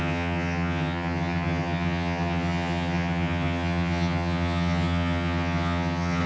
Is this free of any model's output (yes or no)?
no